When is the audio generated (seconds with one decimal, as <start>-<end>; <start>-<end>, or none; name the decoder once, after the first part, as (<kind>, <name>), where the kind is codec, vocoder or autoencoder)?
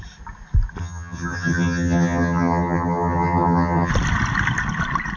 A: 0.8-3.9 (vocoder, HiFi-GAN)